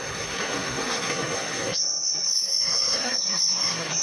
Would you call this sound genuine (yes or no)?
no